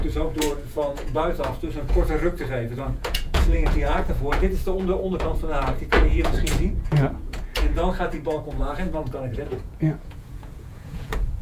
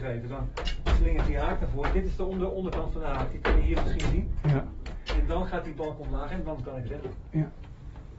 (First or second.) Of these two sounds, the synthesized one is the first